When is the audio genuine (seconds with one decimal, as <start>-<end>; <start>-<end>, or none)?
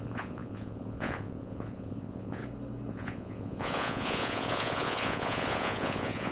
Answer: 2.4-2.9